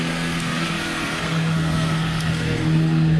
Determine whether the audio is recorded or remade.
remade